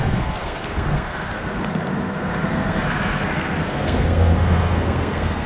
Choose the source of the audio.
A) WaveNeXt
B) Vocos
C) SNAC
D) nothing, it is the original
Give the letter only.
C